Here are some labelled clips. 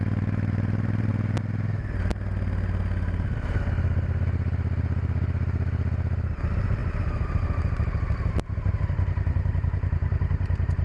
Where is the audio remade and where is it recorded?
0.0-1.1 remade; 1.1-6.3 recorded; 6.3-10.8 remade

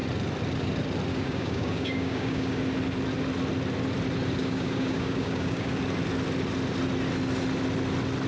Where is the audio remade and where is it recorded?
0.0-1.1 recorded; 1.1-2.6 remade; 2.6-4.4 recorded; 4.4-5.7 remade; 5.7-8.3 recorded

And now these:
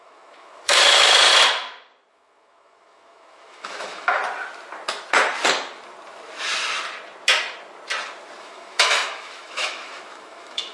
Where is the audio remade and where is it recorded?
0.0-1.3 remade; 1.3-2.1 recorded; 2.1-4.2 remade; 4.2-8.4 recorded; 8.4-10.7 remade

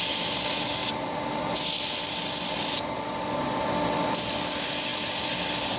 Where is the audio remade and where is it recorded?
0.0-0.8 recorded; 0.8-4.3 remade; 4.3-4.9 recorded; 4.9-5.8 remade